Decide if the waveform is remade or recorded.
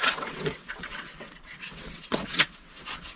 remade